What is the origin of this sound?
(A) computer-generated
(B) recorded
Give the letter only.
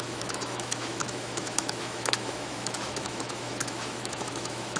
A